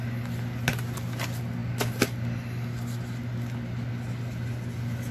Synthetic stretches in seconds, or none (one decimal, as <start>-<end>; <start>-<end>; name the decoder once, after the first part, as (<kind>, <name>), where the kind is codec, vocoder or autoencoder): none